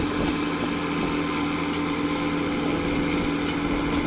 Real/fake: real